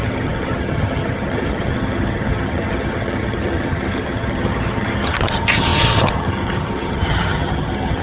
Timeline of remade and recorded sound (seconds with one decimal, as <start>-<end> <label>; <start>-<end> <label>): 0.0-8.0 remade